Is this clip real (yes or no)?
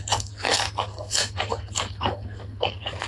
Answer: no